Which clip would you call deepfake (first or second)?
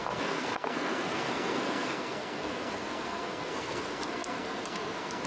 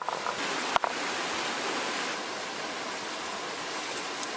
first